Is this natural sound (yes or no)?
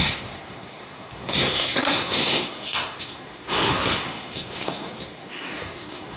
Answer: no